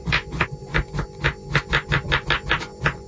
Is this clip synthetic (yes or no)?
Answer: no